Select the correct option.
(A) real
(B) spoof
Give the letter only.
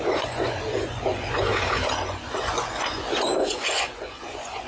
B